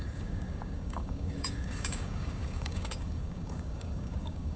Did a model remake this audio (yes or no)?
yes